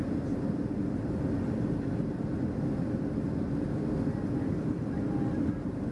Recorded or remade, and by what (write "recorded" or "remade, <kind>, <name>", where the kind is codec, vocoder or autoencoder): recorded